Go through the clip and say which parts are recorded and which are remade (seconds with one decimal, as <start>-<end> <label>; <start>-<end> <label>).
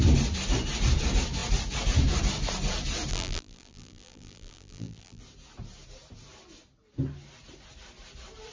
0.0-3.1 recorded; 3.1-5.2 remade; 5.2-8.5 recorded